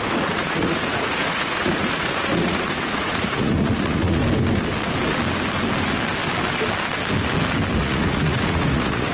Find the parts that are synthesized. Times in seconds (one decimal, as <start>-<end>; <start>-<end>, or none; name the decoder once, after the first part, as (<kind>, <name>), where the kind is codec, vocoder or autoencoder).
0.0-4.2 (vocoder, Vocos); 7.8-9.1

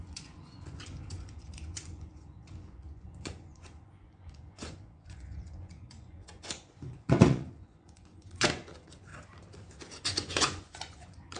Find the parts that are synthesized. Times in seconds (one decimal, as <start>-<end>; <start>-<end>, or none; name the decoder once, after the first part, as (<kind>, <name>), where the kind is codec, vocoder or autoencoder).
0.0-9.1 (vocoder, Vocos); 9.8-11.4

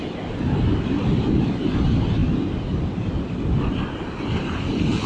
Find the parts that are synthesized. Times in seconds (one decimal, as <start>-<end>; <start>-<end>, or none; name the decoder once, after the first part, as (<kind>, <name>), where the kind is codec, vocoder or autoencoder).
none

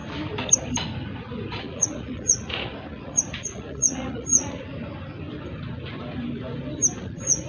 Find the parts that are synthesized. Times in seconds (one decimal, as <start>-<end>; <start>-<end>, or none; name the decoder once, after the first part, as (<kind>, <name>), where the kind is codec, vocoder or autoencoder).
1.6-4.7 (vocoder, Vocos); 7.0-7.5